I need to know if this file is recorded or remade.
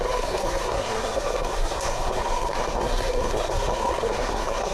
remade